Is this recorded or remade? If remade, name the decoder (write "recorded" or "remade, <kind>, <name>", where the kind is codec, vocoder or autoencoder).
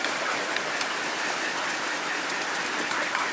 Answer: recorded